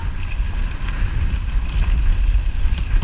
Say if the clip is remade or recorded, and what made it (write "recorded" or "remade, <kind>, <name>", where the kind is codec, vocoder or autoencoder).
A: recorded